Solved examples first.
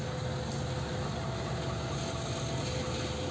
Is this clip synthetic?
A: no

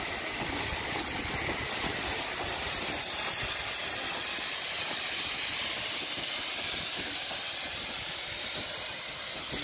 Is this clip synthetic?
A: no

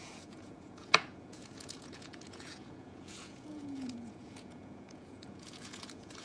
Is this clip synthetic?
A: yes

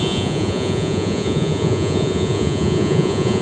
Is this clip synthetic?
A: yes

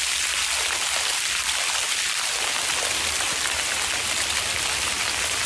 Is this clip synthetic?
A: no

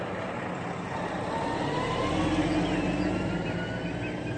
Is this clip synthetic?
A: no